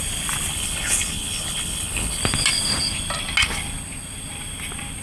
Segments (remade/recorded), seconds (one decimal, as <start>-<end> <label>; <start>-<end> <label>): 0.0-0.5 recorded; 0.5-2.2 remade; 2.2-5.0 recorded